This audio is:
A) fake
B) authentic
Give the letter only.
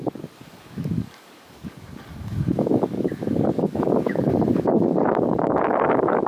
A